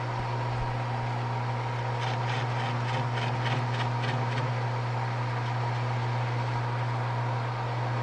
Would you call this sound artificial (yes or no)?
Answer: no